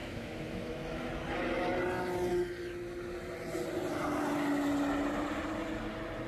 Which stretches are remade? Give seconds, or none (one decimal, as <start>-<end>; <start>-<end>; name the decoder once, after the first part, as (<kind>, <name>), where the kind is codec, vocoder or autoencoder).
0.0-0.8 (autoencoder, DAC-VAE)